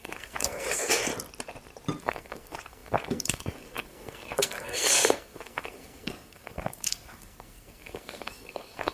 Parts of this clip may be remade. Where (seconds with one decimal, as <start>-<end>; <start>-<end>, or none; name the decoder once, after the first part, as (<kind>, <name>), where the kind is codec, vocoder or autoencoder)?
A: 0.0-1.1 (codec, SNAC); 2.0-8.9